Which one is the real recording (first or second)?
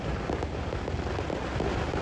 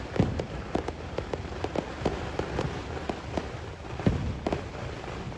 first